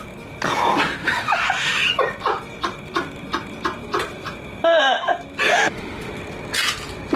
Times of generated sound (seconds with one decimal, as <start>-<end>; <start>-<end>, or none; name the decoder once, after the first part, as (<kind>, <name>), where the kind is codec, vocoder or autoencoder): 1.0-1.8 (autoencoder, DAC-VAE); 5.5-6.1